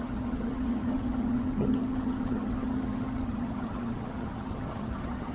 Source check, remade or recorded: remade